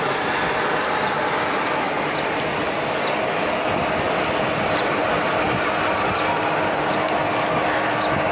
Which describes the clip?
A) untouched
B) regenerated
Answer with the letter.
A